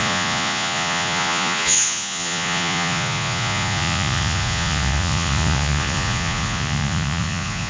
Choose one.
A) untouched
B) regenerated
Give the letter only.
B